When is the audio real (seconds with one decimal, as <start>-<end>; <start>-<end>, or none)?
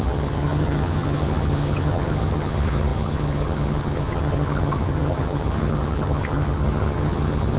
none